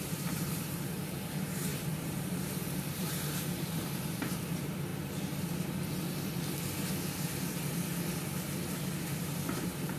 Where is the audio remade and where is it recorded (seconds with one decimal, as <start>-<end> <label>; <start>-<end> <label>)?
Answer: 0.0-4.9 remade; 4.9-9.2 recorded; 9.2-10.0 remade